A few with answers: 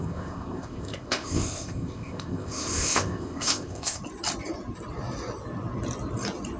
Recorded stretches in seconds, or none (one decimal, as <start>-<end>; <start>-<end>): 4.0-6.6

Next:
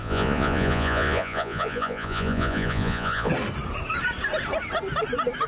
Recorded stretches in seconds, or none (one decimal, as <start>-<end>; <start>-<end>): 3.3-5.5

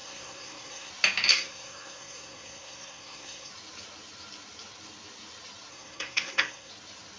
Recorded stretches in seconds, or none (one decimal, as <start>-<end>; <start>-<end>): 0.9-1.3; 3.5-5.7; 6.7-7.2

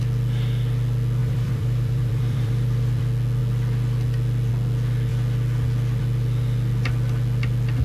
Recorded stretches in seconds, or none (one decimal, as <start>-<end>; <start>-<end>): 0.0-1.2; 3.0-7.8

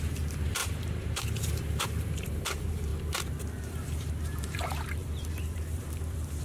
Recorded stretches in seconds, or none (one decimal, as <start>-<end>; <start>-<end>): 2.9-3.4

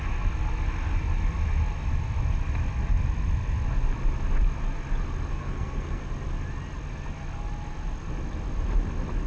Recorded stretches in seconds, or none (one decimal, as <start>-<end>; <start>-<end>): 0.0-5.3; 6.1-9.3

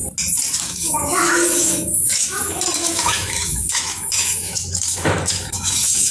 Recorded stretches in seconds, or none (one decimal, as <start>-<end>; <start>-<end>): 0.0-0.6

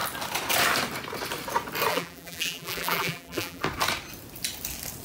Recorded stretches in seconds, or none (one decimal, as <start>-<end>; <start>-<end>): 0.0-1.9; 3.6-5.0